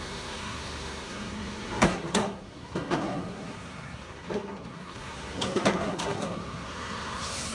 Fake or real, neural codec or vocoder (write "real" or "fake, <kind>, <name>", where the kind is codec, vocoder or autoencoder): fake, codec, SNAC